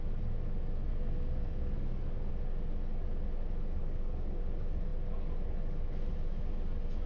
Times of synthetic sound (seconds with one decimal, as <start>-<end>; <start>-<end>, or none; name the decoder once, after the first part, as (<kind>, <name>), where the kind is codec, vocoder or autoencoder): 0.9-2.3 (codec, SNAC); 3.8-4.4